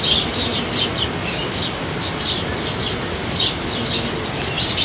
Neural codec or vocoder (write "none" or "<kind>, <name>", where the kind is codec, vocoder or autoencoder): none